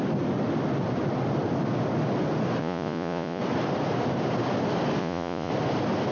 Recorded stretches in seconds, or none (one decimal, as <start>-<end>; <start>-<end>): 0.0-2.6; 3.4-5.0; 5.5-6.1